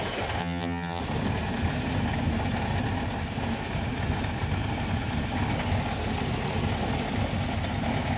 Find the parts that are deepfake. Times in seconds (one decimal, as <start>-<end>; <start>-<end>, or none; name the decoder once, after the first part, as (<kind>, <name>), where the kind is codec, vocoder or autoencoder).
0.4-1.0 (vocoder, HiFi-GAN)